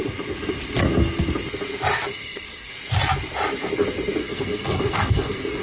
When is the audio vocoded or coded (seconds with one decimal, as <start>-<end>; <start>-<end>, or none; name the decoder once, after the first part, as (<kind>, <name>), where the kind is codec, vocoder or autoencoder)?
2.1-2.7 (codec, SNAC); 4.2-5.6

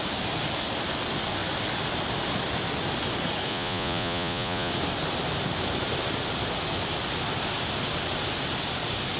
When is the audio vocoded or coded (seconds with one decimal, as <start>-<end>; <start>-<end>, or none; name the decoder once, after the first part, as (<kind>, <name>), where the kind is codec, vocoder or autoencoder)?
3.5-4.7 (vocoder, Vocos)

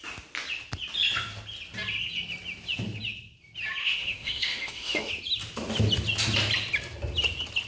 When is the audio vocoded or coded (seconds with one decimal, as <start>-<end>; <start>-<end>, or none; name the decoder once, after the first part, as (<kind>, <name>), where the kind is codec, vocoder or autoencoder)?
3.8-5.1 (autoencoder, DAC-VAE)

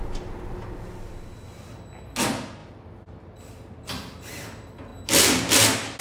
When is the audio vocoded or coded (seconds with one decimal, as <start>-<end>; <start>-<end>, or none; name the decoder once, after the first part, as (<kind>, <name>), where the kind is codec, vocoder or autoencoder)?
none

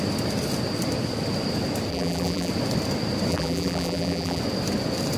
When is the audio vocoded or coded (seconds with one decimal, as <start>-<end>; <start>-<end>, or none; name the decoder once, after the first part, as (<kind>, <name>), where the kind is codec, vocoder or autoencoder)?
1.9-2.5 (vocoder, BigVGAN v2); 3.3-4.4

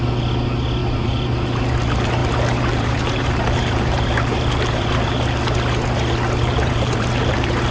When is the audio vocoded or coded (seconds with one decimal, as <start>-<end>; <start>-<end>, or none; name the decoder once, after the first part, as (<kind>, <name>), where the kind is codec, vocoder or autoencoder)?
0.8-1.6 (vocoder, BigVGAN v2); 2.2-5.1; 6.4-7.7